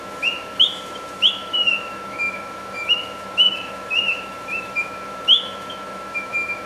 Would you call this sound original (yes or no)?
no